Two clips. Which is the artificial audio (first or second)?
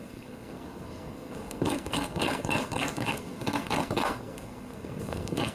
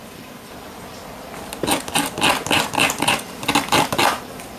first